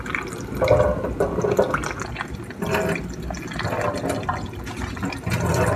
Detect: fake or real real